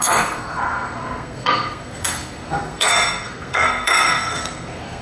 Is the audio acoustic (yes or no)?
no